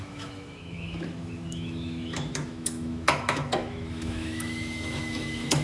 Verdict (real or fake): fake